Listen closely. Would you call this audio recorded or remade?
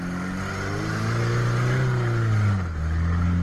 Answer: recorded